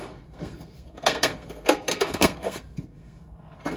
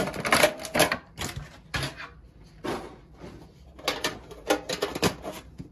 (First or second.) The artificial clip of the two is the first